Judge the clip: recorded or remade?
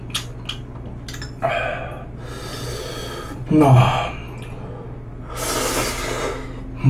recorded